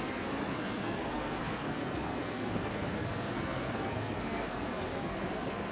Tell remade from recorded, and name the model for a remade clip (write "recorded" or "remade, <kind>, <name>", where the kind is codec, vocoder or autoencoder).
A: remade, codec, SNAC